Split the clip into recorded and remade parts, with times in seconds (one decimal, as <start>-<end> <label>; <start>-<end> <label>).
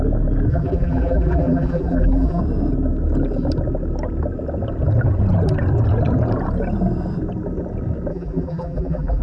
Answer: 0.0-0.5 recorded; 0.5-2.4 remade; 2.4-8.1 recorded; 8.1-9.2 remade